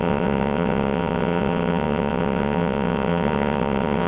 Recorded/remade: remade